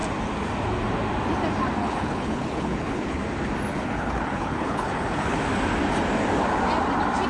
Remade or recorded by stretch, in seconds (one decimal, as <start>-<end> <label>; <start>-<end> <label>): 0.0-1.8 recorded; 1.8-3.2 remade; 3.2-3.7 recorded; 3.7-5.4 remade; 5.4-7.3 recorded